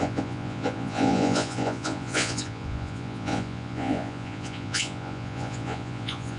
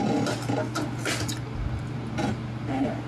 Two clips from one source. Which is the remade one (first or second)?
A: first